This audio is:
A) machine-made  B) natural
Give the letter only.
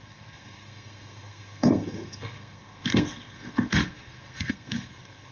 A